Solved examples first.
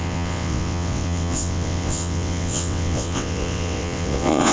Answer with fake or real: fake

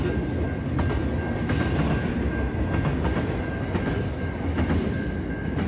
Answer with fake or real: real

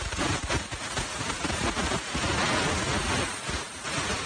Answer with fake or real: real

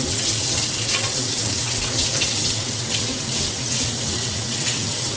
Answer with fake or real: fake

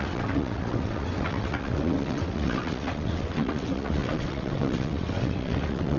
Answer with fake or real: fake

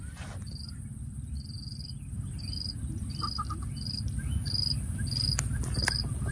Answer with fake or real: real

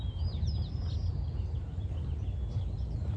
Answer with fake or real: real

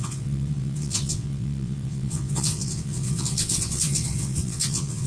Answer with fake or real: fake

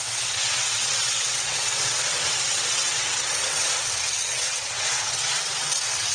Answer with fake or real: fake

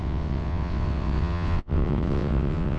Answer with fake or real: fake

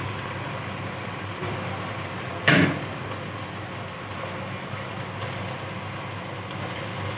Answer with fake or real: real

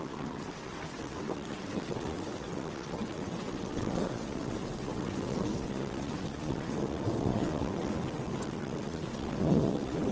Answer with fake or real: fake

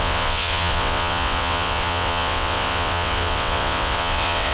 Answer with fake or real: fake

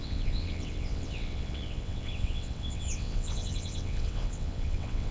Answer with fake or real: fake